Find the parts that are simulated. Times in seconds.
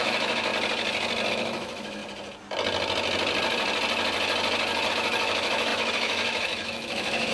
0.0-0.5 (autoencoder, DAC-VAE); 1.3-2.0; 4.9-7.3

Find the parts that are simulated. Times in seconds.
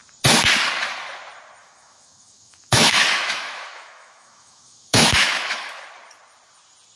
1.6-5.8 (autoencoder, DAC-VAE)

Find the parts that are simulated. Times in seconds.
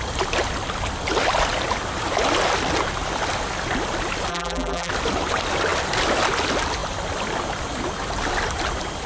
4.3-4.9 (vocoder, BigVGAN v2)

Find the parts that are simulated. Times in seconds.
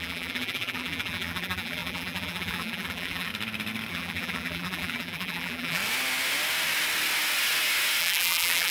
0.0-3.3 (vocoder, BigVGAN v2); 3.9-5.8; 8.0-8.7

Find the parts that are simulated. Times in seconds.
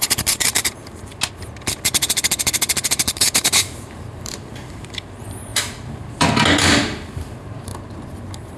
0.0-1.1 (vocoder, BigVGAN v2); 2.9-7.7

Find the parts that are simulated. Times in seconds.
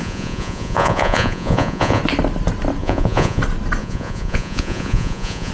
0.0-2.0 (vocoder, Vocos); 2.8-3.4; 3.8-5.5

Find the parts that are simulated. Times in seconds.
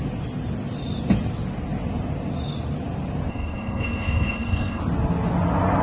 3.3-4.8 (codec, SNAC)